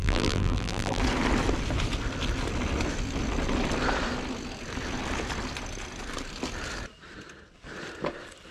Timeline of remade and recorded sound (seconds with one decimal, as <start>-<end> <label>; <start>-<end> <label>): 0.0-1.0 remade; 1.0-8.5 recorded